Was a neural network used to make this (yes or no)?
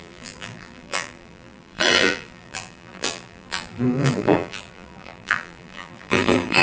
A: yes